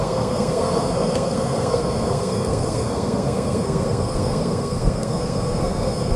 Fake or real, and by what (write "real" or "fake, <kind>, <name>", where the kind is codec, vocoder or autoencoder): fake, codec, SNAC